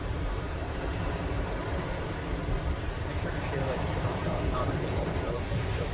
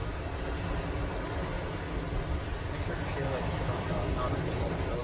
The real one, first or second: second